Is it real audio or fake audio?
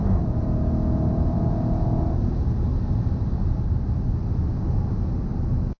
real